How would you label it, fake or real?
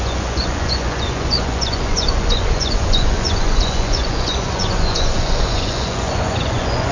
fake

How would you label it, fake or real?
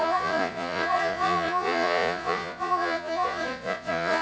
fake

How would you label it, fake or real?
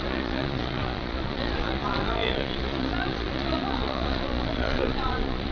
fake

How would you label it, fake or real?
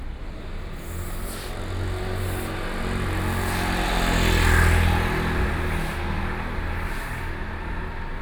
real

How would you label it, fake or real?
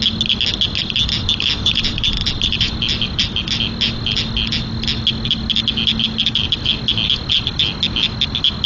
real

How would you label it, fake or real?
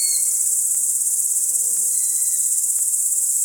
real